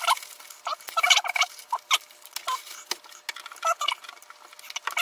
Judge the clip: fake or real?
real